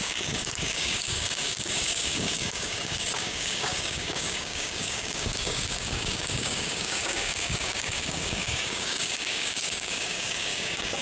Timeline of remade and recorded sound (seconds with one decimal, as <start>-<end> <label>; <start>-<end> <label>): 0.0-11.0 remade